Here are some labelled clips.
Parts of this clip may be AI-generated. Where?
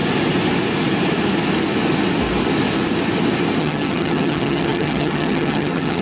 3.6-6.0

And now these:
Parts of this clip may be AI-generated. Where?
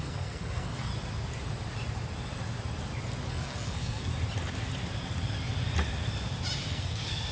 0.0-0.9; 3.3-4.1; 6.7-7.3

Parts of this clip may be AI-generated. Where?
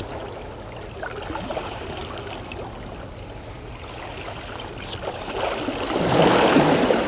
1.5-2.0